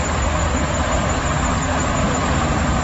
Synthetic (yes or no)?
no